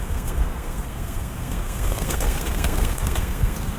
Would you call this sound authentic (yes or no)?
no